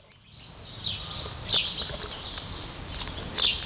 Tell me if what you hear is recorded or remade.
recorded